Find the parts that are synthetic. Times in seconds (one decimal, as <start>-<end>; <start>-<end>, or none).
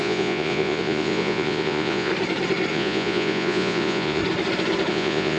0.0-2.1; 2.7-4.2; 4.9-5.4